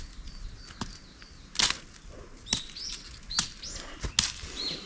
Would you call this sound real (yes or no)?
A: yes